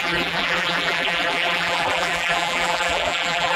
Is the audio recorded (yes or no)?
no